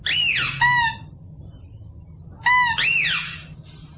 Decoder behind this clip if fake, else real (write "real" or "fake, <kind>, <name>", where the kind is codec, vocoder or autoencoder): real